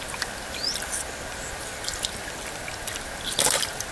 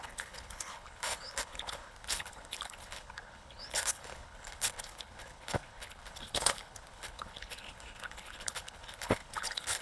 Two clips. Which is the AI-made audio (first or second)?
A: second